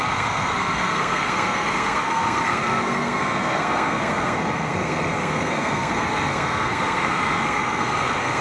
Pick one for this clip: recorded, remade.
remade